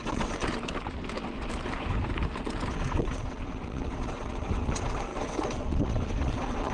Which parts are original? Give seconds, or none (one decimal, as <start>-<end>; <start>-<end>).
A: 0.4-2.7